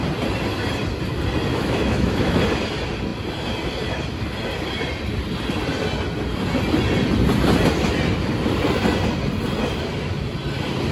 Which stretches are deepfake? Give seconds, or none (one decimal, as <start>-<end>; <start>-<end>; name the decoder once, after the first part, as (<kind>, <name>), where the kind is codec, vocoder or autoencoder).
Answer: 1.5-2.4 (autoencoder, DAC-VAE)